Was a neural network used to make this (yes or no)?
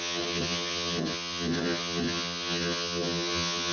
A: yes